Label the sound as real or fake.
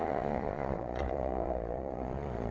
fake